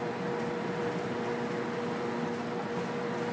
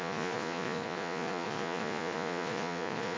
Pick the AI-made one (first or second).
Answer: second